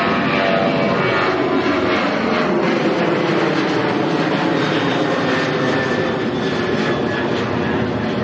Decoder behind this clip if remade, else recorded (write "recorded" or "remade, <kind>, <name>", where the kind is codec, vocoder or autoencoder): recorded